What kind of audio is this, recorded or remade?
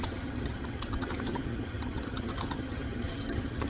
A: remade